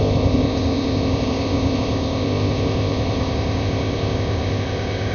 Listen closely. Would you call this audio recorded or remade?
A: remade